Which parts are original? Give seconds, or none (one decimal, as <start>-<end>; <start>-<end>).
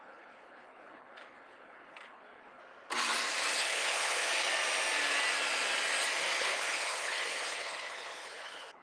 2.6-3.6; 4.3-6.4